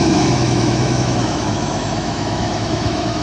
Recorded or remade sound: remade